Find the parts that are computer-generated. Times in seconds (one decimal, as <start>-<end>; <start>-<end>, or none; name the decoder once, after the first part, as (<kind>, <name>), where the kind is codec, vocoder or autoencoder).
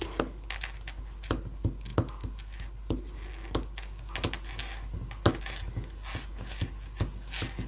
none